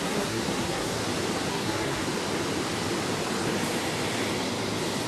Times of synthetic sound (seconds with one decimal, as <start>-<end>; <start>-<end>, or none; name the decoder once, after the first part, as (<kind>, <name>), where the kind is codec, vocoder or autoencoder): 0.0-1.0 (codec, SNAC); 1.5-2.0